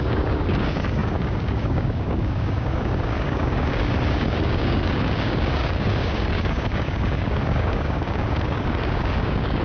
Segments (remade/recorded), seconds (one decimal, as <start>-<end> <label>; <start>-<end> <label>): 0.0-9.6 remade